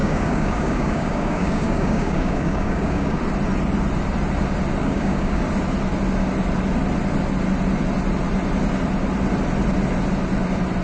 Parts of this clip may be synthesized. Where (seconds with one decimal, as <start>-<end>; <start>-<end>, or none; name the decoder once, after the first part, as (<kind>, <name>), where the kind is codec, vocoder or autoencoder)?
0.0-3.2 (codec, DAC); 4.8-5.4